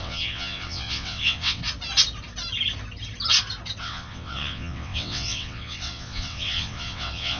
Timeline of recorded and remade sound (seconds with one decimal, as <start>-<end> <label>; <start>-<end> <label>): 0.0-1.6 remade; 1.6-3.8 recorded; 3.8-7.4 remade